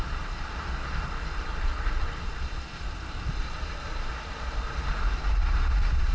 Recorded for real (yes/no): no